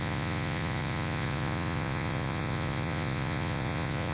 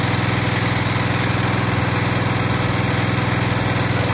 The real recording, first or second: second